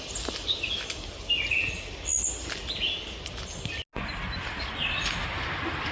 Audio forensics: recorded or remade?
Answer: recorded